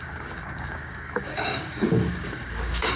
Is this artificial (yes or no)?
yes